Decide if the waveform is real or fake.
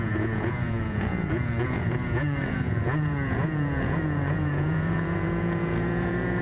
fake